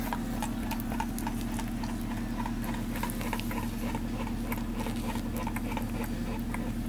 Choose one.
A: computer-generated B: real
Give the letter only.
B